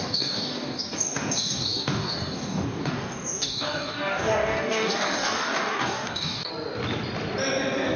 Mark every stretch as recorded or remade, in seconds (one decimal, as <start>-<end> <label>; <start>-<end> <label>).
0.0-6.5 remade; 6.5-8.0 recorded